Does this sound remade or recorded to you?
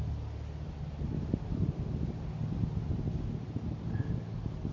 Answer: recorded